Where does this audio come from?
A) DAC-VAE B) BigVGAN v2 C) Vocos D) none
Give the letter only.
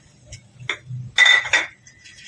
D